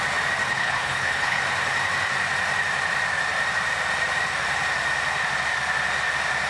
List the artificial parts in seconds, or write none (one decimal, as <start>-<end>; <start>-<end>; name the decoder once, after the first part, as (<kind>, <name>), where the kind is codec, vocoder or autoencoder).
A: 0.5-1.4 (codec, HILCodec)